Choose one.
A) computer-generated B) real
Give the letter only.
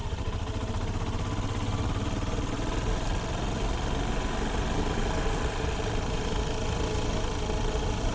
B